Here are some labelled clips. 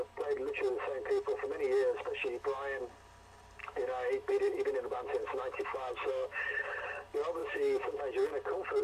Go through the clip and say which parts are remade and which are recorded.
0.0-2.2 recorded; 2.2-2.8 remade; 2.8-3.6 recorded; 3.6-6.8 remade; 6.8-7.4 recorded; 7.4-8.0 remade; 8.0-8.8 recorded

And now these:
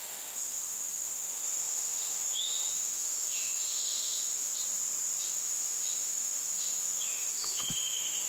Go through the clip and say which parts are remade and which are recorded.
0.0-4.5 remade; 4.5-5.2 recorded; 5.2-8.3 remade

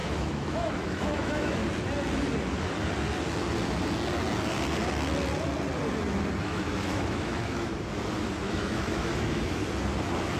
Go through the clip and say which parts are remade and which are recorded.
0.0-1.6 remade; 1.6-6.4 recorded; 6.4-7.7 remade; 7.7-8.5 recorded; 8.5-9.6 remade; 9.6-10.4 recorded

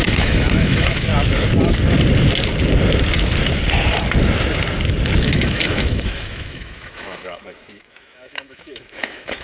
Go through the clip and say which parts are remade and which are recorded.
0.0-1.1 remade; 1.1-5.2 recorded; 5.2-9.4 remade

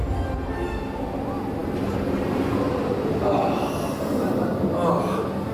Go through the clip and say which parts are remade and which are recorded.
0.0-5.5 recorded

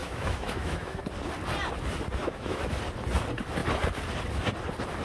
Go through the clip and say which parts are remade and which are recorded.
0.0-1.0 remade; 1.0-2.2 recorded; 2.2-2.7 remade; 2.7-5.0 recorded